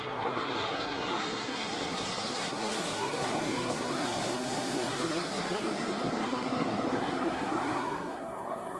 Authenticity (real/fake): fake